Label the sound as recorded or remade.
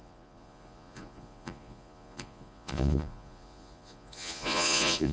remade